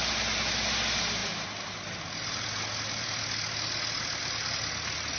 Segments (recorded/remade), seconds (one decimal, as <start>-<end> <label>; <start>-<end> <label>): 0.0-5.2 recorded